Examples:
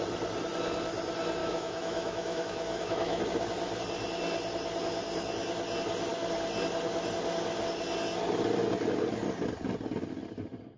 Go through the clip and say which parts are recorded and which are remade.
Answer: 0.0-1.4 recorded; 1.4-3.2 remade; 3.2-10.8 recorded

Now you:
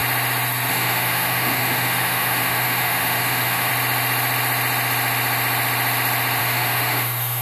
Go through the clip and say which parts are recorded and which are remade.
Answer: 0.0-0.7 recorded; 0.7-3.7 remade; 3.7-6.4 recorded; 6.4-7.4 remade

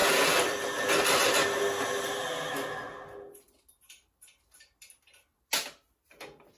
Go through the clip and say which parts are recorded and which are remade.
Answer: 0.0-6.6 recorded